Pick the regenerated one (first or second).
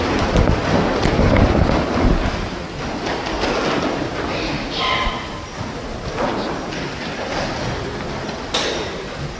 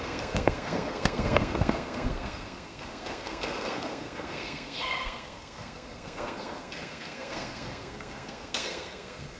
second